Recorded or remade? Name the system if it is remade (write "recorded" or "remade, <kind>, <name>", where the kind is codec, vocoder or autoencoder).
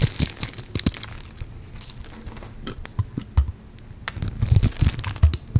recorded